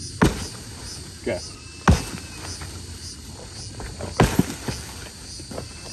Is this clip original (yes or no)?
yes